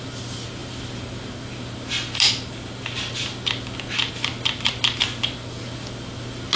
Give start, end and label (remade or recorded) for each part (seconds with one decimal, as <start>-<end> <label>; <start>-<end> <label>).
0.0-6.6 recorded